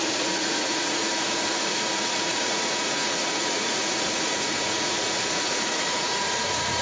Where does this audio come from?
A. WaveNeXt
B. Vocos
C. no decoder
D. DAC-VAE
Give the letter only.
B